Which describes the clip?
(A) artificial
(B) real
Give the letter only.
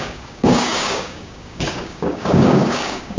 A